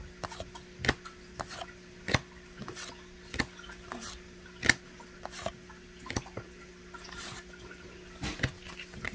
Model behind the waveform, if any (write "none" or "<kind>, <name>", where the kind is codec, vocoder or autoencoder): none